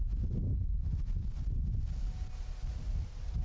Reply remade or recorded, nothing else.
recorded